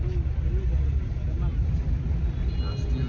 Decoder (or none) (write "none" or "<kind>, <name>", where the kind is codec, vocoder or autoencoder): none